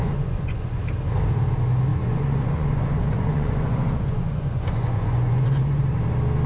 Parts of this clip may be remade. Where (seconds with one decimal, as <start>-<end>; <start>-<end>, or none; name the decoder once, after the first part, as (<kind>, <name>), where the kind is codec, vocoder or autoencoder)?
0.0-0.8 (vocoder, Vocos); 1.9-5.8